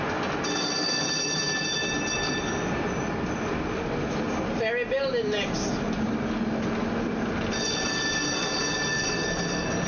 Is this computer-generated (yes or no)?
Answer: no